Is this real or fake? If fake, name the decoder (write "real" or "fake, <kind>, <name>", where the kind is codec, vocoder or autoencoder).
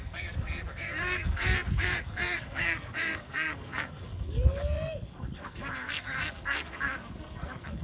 fake, codec, SNAC